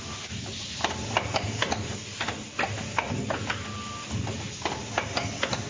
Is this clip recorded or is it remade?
recorded